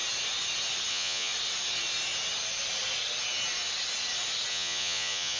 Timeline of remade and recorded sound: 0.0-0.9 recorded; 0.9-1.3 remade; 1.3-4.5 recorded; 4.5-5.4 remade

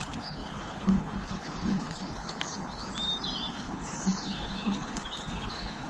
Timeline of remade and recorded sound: 0.0-2.9 remade; 2.9-3.5 recorded; 3.5-5.9 remade

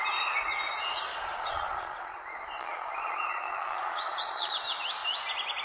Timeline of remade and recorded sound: 0.0-1.1 recorded; 1.1-4.5 remade; 4.5-5.6 recorded

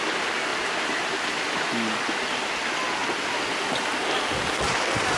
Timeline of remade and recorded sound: 0.0-0.5 recorded; 0.5-1.2 remade; 1.2-5.2 recorded

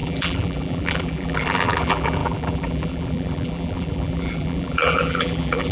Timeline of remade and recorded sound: 0.0-5.7 remade